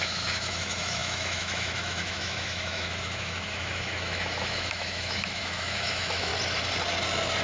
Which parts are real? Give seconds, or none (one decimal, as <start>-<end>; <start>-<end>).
6.3-7.4